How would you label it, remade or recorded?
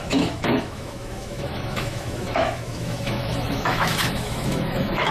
remade